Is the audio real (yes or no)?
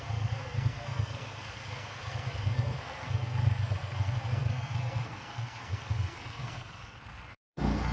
no